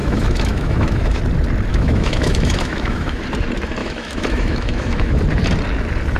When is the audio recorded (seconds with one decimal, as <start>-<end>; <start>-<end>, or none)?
1.2-1.7; 3.2-3.8; 5.2-6.2